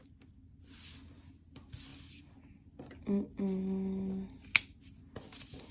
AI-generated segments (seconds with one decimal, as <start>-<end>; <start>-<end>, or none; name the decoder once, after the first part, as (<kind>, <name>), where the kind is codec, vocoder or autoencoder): none